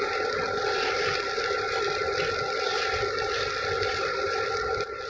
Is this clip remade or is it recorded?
recorded